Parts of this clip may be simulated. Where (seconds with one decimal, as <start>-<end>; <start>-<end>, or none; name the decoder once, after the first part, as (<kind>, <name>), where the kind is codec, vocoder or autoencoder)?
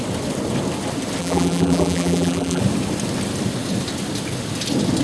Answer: 1.2-2.6 (vocoder, BigVGAN v2)